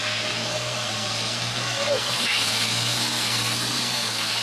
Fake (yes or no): yes